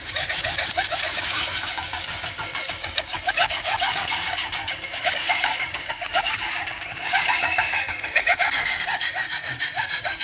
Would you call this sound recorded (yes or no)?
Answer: no